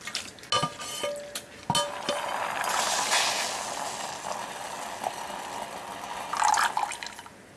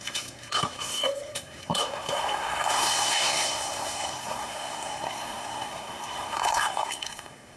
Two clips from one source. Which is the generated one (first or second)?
second